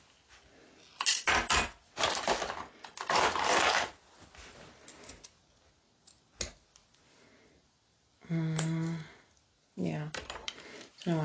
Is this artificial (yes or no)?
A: no